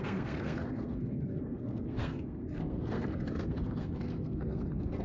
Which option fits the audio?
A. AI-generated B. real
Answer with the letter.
A